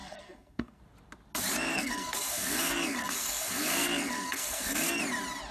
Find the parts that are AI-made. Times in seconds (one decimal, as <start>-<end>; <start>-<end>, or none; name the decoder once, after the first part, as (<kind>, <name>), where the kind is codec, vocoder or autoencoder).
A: 0.0-0.8 (codec, SNAC); 1.7-5.0